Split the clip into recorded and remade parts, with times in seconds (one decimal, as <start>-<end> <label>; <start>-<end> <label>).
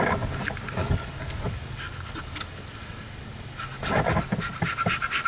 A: 0.0-0.8 recorded; 0.8-4.0 remade; 4.0-5.3 recorded